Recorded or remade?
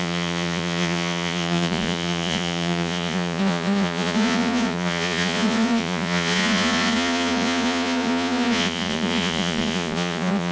remade